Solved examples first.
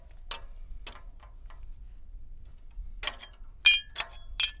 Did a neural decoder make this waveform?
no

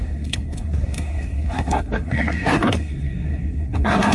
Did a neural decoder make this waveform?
yes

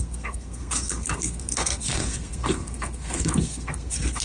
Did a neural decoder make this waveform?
yes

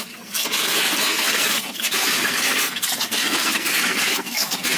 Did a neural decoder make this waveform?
yes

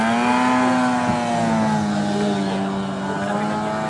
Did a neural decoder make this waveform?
no